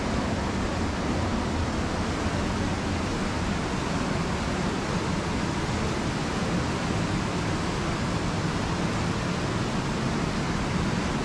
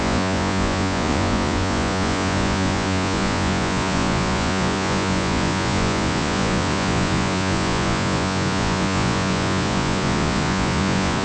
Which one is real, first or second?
first